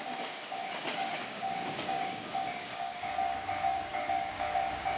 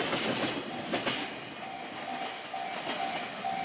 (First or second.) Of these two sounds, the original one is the second